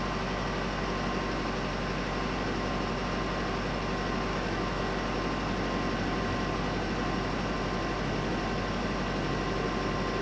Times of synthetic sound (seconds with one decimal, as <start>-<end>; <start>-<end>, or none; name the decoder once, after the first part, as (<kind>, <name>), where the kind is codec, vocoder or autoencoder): 4.3-4.8 (autoencoder, DAC-VAE)